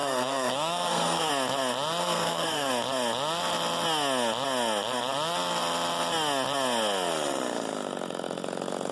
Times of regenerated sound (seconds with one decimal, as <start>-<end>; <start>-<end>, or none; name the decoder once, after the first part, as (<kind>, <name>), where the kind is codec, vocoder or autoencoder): 0.0-1.3 (codec, SNAC); 2.0-2.7